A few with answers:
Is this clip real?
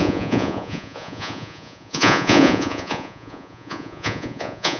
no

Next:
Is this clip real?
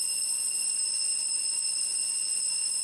yes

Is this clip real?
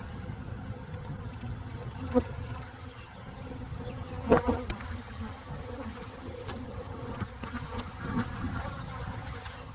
no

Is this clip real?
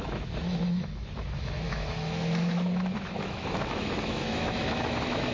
no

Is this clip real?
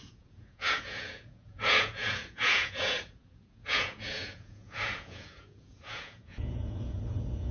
no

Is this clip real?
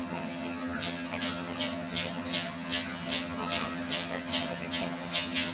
no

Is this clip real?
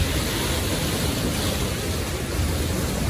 yes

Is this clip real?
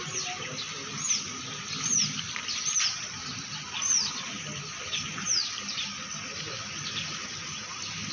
no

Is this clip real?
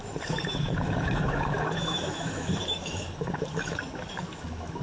no